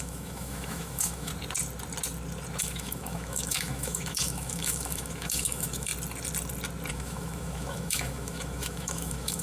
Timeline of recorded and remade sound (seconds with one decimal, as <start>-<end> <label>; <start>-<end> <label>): 0.0-1.3 remade; 1.3-2.6 recorded; 2.6-5.9 remade; 5.9-6.9 recorded; 6.9-9.4 remade